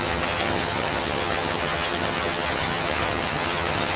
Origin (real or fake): fake